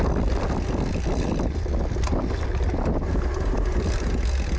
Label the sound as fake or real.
real